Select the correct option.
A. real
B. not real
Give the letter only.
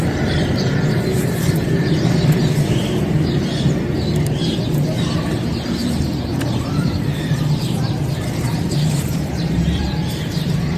B